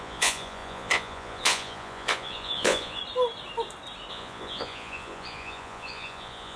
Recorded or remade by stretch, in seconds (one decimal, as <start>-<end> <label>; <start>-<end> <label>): 0.0-3.0 remade; 3.0-4.1 recorded; 4.1-6.6 remade

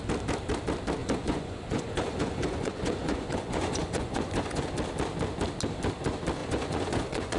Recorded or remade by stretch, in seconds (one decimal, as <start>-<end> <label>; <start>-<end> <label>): 0.0-1.0 recorded; 1.0-4.6 remade; 4.6-6.4 recorded; 6.4-7.4 remade

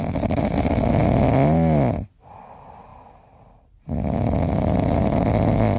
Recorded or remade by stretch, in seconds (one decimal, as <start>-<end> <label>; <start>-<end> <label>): 0.0-5.8 recorded

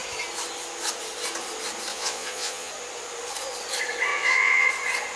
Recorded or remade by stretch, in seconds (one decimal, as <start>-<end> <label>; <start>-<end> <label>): 0.0-1.9 recorded; 1.9-2.7 remade; 2.7-4.1 recorded; 4.1-4.7 remade; 4.7-5.2 recorded

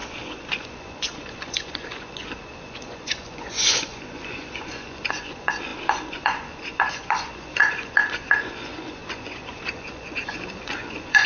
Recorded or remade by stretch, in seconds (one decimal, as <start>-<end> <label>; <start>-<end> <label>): 0.0-11.3 remade